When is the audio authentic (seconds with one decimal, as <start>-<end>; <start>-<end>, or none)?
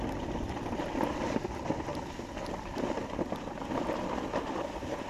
0.0-5.1